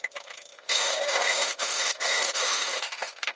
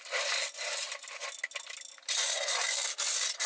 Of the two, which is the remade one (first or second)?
first